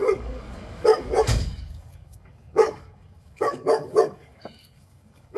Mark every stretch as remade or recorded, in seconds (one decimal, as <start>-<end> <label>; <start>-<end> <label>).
0.0-5.4 remade